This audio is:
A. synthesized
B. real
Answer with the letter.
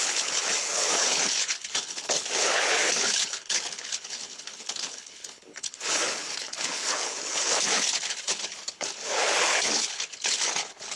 A